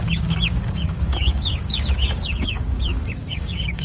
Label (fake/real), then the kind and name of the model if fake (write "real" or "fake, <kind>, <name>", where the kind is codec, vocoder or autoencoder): fake, codec, DAC